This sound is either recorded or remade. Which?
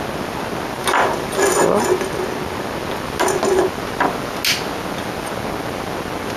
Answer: recorded